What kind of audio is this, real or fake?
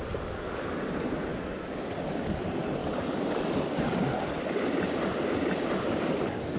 real